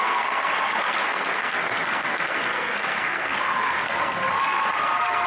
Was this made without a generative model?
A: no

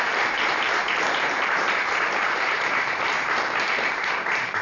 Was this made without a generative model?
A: no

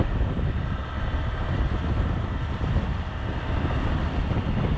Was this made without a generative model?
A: yes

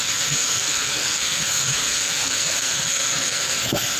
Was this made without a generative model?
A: no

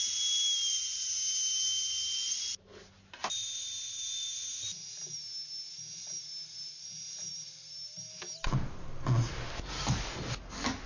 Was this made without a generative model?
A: yes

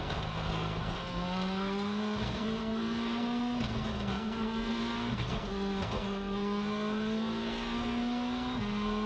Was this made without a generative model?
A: no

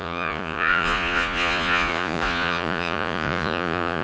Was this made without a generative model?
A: no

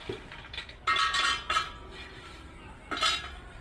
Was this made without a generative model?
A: yes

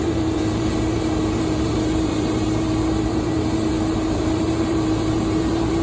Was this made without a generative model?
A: no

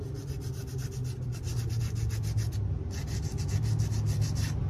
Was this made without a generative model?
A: yes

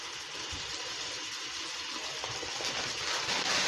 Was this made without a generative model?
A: yes